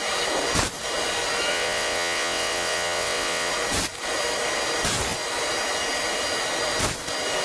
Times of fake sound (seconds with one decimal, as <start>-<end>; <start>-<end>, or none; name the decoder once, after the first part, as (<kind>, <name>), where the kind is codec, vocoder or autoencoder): 1.5-3.5 (vocoder, WaveNeXt)